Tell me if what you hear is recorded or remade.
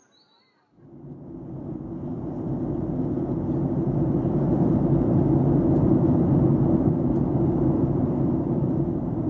recorded